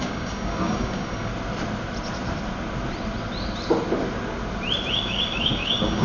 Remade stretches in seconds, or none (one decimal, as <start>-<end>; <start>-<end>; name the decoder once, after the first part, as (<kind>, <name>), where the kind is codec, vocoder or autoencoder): 0.0-1.3 (codec, DAC); 4.9-6.0